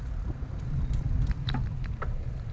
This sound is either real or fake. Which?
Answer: real